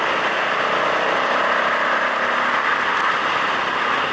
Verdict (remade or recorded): recorded